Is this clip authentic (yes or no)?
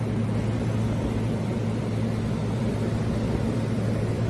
yes